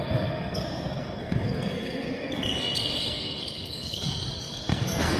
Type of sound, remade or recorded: remade